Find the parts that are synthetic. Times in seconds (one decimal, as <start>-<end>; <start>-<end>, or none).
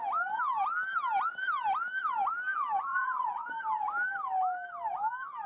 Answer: 2.9-3.5